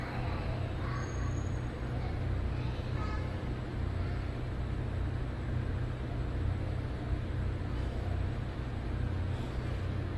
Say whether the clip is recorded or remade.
recorded